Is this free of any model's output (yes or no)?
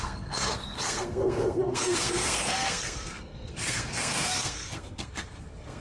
no